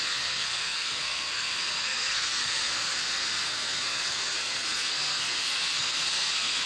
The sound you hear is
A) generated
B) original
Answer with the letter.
A